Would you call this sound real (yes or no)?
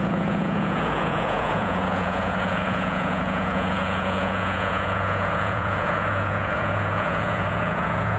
no